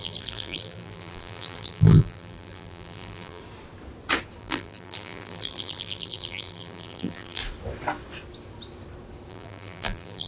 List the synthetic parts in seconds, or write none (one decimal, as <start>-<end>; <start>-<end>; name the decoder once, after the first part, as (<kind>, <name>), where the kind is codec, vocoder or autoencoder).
0.0-3.4 (vocoder, BigVGAN v2); 4.4-7.4; 9.3-10.3